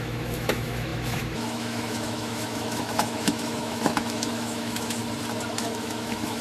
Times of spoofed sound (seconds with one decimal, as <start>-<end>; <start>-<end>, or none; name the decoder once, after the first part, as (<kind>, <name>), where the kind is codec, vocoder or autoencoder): 0.0-5.0 (autoencoder, DAC-VAE); 5.6-6.4